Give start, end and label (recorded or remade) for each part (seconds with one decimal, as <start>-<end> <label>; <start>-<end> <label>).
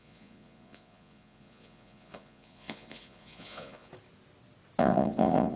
0.0-3.9 remade; 3.9-4.8 recorded; 4.8-5.6 remade